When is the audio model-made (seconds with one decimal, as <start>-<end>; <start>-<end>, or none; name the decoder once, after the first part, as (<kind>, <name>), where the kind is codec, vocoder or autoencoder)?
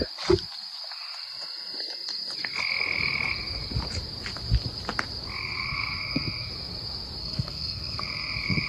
5.4-6.5 (codec, SNAC); 7.2-8.7